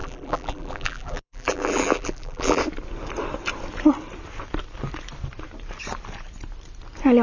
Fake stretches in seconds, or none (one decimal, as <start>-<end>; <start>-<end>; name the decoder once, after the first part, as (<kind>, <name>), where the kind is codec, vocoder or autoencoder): 0.0-2.6 (vocoder, BigVGAN v2)